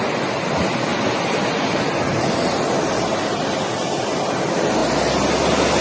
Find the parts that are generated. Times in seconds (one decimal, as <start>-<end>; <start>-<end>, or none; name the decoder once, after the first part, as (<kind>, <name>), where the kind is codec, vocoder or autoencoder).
none